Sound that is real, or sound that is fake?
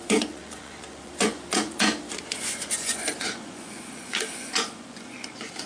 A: fake